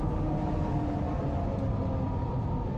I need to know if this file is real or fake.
real